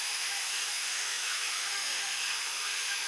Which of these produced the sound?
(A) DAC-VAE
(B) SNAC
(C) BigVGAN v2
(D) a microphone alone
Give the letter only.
A